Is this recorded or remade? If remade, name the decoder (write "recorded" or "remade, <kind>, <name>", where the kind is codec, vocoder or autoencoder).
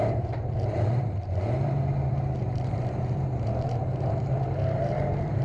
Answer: remade, vocoder, BigVGAN v2